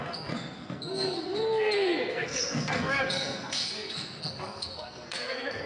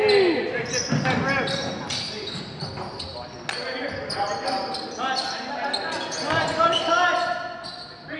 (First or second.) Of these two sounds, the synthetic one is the first